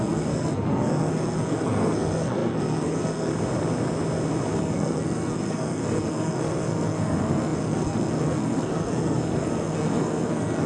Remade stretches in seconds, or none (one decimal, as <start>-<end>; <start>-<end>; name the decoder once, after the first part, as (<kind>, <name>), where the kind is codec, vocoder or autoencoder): 0.0-3.3 (codec, SNAC); 4.6-10.7